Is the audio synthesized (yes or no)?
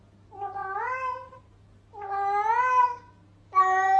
no